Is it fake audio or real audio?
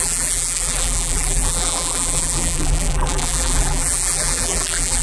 fake